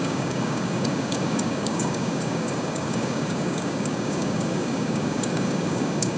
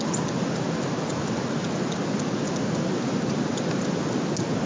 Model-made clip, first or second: first